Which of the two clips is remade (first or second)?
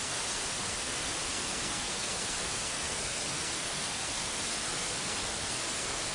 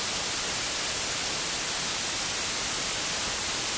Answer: first